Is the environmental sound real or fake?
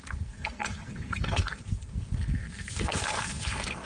fake